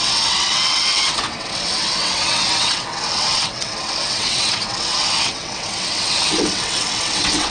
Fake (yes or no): yes